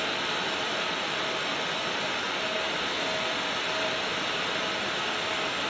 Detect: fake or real real